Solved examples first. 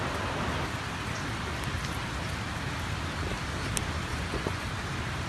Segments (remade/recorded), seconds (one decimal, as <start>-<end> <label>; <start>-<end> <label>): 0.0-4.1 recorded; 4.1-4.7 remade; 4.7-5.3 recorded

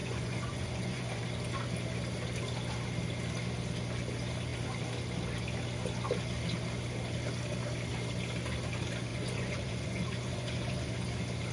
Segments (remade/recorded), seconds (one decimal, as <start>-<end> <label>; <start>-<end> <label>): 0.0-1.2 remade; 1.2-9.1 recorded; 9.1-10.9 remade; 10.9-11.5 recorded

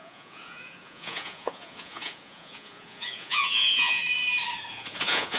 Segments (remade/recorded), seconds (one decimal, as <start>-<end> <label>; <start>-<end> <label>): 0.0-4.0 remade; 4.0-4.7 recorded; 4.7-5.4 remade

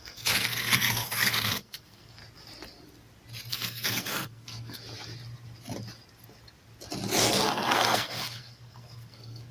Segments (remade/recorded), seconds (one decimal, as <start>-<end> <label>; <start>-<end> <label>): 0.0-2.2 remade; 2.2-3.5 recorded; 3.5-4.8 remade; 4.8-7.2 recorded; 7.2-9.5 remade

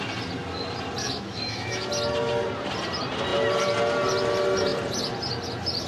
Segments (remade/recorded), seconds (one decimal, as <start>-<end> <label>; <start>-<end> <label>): 0.0-1.0 recorded; 1.0-1.9 remade; 1.9-5.9 recorded